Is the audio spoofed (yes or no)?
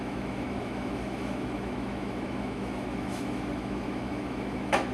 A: yes